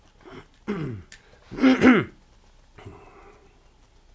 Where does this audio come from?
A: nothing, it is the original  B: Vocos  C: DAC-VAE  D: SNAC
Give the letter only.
A